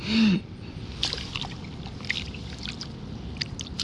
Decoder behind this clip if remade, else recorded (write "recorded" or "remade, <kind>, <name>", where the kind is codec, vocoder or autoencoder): recorded